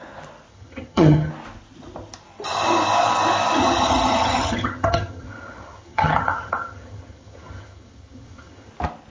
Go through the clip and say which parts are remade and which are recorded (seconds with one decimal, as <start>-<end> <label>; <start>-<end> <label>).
0.0-0.5 recorded; 0.5-1.3 remade; 1.3-3.6 recorded; 3.6-8.7 remade; 8.7-9.1 recorded